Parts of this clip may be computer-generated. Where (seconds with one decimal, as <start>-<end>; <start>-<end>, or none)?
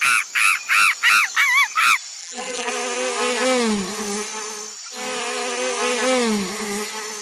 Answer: 2.2-2.7